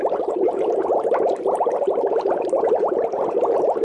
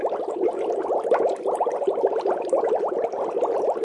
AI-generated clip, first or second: first